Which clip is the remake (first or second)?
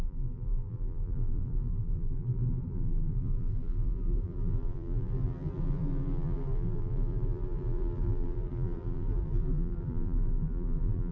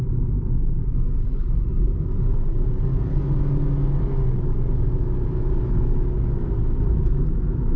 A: first